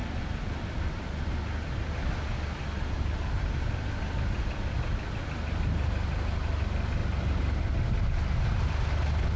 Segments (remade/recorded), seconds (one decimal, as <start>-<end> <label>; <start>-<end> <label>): 0.0-9.4 recorded